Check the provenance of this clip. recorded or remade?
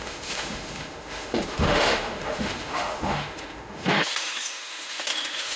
remade